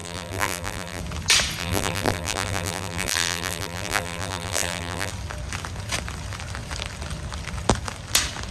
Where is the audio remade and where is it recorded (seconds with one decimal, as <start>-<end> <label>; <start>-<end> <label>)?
0.0-1.0 remade; 1.0-1.6 recorded; 1.6-5.1 remade; 5.1-8.5 recorded